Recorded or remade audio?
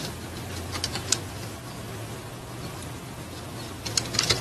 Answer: recorded